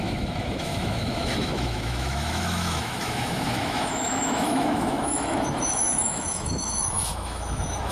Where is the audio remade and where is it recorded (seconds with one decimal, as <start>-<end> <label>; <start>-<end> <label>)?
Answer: 0.0-7.9 remade